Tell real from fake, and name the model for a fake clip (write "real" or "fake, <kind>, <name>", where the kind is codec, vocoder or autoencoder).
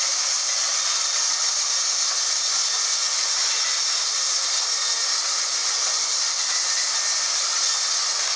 real